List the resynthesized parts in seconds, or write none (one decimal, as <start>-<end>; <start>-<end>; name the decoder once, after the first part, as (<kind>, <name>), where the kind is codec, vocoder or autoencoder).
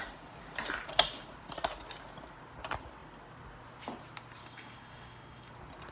4.4-5.5 (codec, DAC)